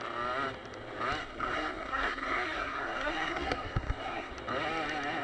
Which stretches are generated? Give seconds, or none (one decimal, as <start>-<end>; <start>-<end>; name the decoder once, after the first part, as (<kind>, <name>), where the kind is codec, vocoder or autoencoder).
1.2-4.3 (codec, SNAC)